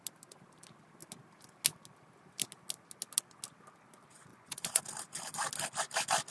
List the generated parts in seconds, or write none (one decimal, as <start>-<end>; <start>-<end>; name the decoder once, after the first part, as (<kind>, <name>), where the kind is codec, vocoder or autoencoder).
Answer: 4.3-4.8 (vocoder, Vocos)